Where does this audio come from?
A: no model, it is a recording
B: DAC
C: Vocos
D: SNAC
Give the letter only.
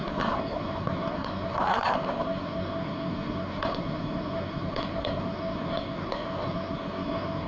D